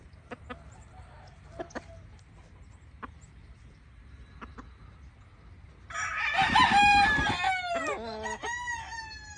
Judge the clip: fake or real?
real